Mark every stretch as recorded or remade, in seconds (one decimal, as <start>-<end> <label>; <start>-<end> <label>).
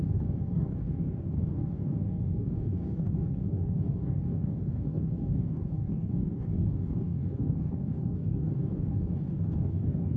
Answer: 0.0-10.2 remade